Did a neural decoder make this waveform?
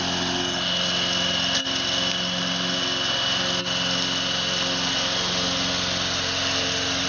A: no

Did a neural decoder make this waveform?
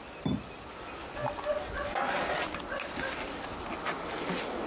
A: no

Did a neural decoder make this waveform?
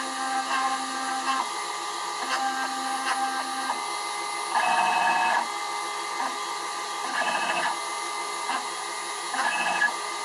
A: no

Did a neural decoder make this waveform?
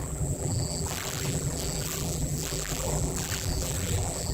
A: yes